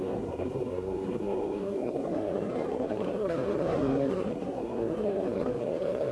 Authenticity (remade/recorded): remade